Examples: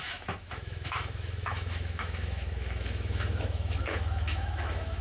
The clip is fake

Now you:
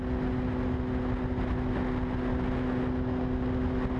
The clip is real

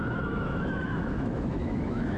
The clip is fake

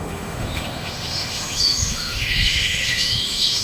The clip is fake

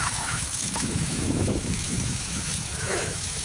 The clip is fake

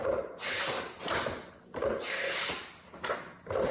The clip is real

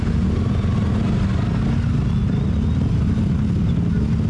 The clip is real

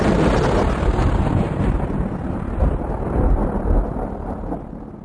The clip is real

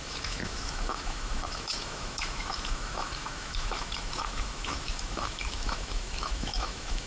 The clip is fake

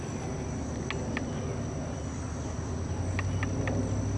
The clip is real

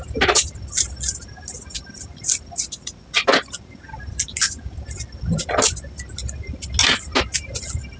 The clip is real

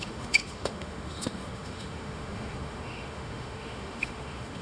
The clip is fake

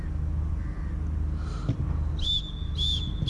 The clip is real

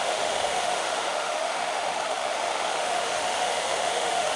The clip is fake